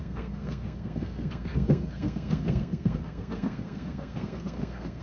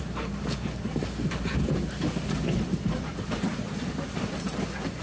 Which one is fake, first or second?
first